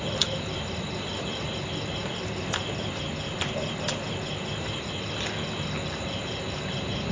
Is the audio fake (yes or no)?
no